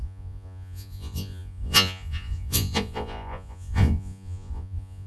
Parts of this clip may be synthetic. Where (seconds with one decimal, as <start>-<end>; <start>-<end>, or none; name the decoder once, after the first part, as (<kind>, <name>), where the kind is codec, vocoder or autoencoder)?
0.0-5.1 (vocoder, Vocos)